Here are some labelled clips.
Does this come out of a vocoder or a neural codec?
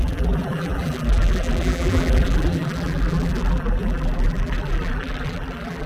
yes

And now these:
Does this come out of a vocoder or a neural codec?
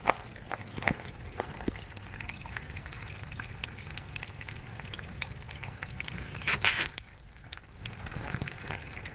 yes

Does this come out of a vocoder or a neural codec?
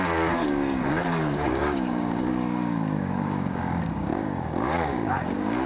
yes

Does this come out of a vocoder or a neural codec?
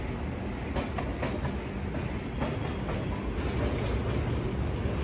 no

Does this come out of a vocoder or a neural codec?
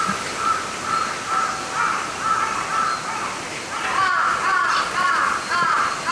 no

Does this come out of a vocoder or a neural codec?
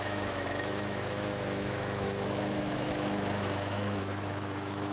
yes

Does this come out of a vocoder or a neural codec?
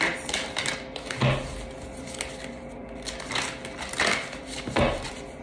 no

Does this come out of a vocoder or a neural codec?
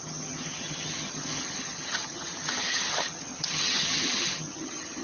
yes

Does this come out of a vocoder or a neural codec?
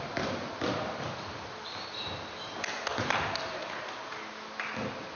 no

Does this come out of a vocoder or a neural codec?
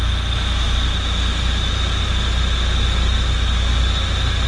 no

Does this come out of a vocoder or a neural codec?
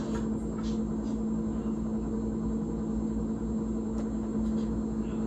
no